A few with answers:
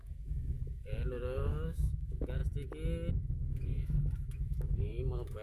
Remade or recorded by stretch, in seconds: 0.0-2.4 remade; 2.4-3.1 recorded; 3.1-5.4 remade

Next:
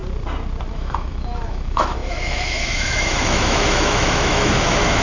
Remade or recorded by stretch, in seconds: 0.0-0.7 recorded; 0.7-5.0 remade

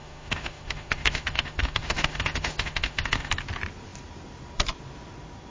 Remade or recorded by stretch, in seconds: 0.0-3.3 remade; 3.3-5.5 recorded